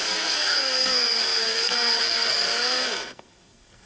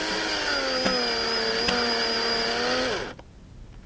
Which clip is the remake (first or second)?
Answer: first